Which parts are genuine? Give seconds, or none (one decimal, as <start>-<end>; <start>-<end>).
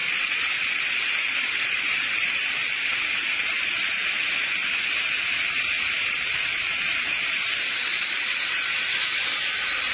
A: none